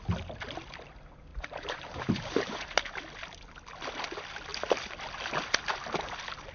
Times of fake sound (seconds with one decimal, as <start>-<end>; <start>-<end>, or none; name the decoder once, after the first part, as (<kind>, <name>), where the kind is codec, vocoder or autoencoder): 1.3-2.7 (vocoder, BigVGAN v2)